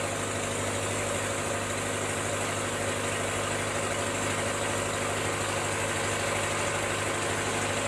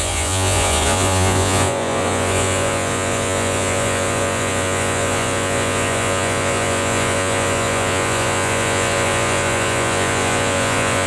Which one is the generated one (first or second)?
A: second